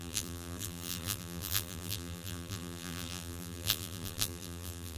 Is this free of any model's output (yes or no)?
no